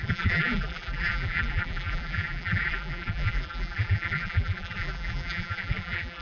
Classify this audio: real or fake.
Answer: fake